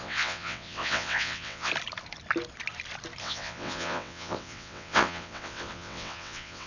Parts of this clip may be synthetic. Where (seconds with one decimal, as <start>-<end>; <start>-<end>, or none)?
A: 0.0-1.7; 3.2-6.7